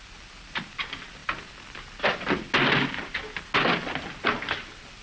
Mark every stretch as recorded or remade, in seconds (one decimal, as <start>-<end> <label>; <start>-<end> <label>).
0.0-5.0 recorded